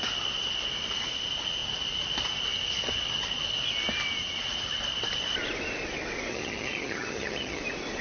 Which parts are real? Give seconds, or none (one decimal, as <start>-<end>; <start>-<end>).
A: 0.0-6.3; 7.6-8.0